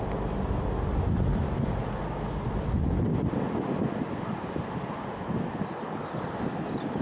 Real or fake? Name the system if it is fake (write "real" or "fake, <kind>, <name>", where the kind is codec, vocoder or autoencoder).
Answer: real